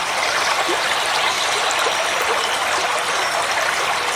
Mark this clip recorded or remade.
remade